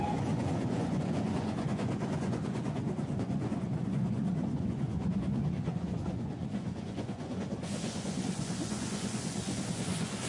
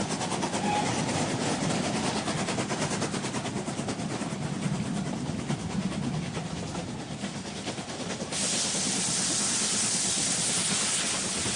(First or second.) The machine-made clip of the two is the first